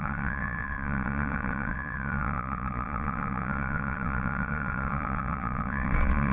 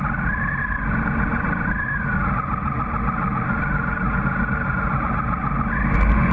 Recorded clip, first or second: second